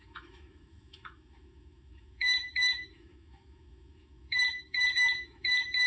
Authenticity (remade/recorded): remade